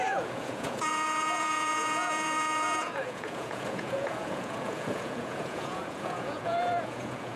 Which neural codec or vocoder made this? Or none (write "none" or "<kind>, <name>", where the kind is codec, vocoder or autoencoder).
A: vocoder, Vocos